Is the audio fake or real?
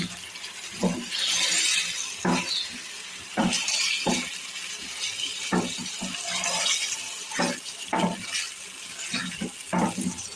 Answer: real